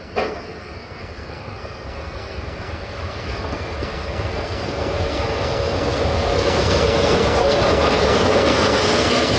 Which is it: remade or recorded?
remade